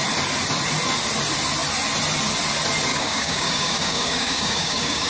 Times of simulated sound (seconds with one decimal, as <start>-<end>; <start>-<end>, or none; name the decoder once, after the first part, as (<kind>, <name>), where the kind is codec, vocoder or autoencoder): 2.9-5.1 (codec, DAC)